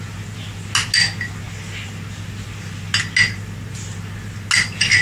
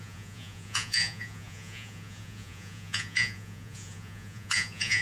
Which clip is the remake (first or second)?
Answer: second